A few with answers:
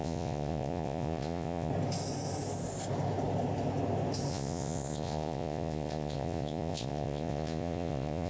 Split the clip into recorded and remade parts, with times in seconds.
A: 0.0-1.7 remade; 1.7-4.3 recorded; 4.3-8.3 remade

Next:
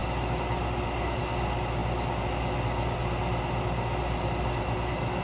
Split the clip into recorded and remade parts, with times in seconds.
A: 0.0-5.2 recorded

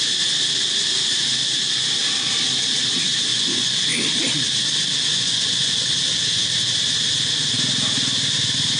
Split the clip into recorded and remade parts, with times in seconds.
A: 0.0-3.3 recorded; 3.3-3.9 remade; 3.9-5.1 recorded; 5.1-5.8 remade; 5.8-8.8 recorded

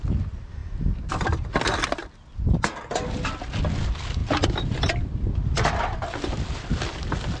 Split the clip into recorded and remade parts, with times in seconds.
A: 0.0-4.2 recorded; 4.2-6.7 remade; 6.7-7.4 recorded